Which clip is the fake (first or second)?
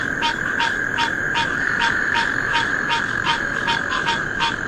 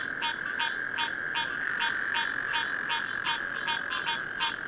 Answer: first